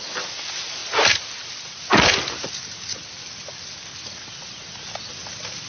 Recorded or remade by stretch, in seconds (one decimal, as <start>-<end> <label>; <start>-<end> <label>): 0.0-5.7 recorded